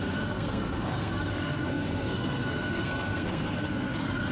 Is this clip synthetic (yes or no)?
yes